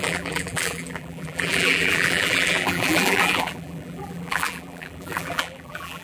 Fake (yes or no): yes